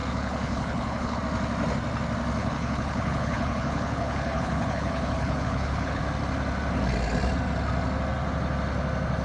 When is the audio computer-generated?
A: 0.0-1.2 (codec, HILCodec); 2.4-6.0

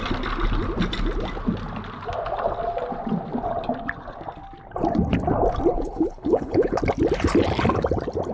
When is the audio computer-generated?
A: 5.7-6.8 (codec, HILCodec)

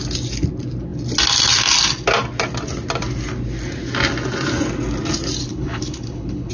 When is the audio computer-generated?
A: 5.4-6.5 (codec, HILCodec)

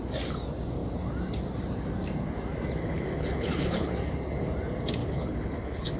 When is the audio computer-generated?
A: 2.8-3.9 (codec, HILCodec); 5.0-6.0